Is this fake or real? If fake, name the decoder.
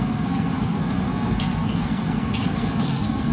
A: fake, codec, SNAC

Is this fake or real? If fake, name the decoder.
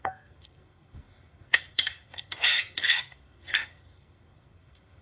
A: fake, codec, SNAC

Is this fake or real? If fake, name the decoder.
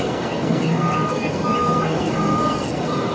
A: fake, codec, SNAC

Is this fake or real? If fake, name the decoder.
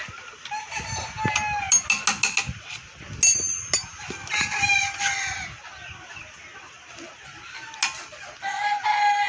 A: real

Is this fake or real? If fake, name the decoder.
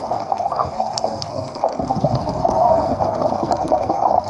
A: fake, codec, SNAC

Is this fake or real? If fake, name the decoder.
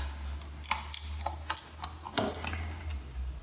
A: real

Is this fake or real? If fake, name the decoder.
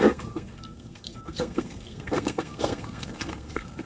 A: fake, codec, SNAC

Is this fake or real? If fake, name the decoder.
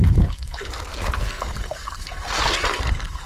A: fake, codec, SNAC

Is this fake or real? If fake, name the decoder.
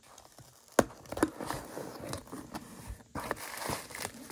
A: real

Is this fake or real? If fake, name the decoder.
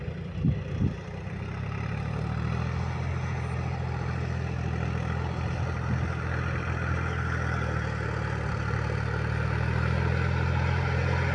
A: real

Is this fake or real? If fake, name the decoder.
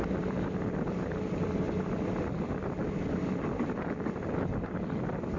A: real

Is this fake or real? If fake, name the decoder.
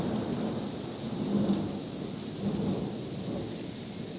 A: real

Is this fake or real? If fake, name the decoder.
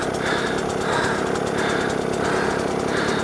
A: real